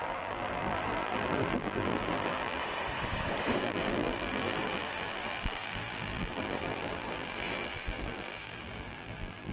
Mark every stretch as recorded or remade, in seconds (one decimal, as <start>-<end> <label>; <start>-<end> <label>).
0.0-2.6 remade; 2.6-3.6 recorded; 3.6-9.5 remade